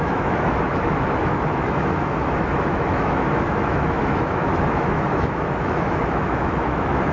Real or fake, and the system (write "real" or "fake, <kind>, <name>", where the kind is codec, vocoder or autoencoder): fake, autoencoder, DAC-VAE